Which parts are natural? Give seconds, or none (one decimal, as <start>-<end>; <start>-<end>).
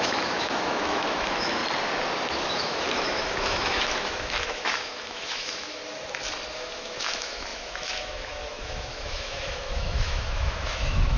1.6-2.3; 5.8-6.5